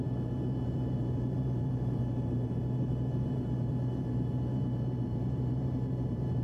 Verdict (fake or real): fake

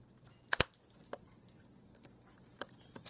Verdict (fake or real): fake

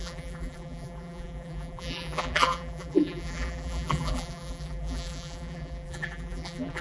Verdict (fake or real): fake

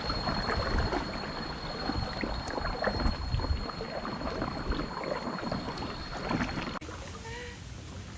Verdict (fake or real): real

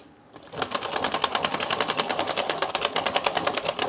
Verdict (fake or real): real